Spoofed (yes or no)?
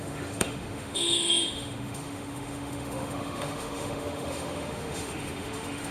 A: yes